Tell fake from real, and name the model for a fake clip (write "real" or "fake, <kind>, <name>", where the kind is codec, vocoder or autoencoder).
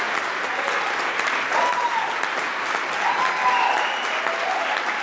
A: real